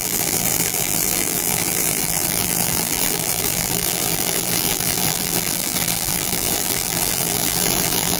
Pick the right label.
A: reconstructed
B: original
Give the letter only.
A